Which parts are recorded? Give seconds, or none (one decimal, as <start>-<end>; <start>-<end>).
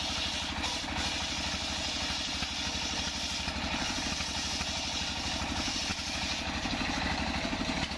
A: 0.0-8.0